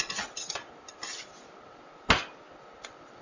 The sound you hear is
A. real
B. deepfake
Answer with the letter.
A